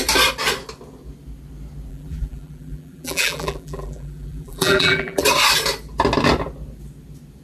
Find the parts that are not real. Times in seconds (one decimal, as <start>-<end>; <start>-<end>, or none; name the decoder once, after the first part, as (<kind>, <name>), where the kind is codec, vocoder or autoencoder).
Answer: 1.9-5.2 (vocoder, BigVGAN v2)